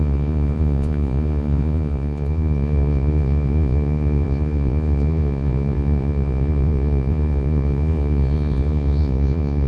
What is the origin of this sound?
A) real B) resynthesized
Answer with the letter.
B